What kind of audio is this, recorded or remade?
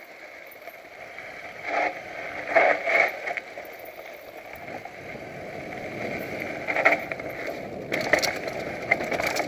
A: recorded